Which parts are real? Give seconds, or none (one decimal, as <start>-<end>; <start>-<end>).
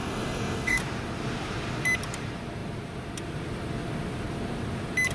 0.8-5.1